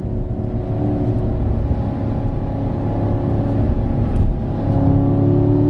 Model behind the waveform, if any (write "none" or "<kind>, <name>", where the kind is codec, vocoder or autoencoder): none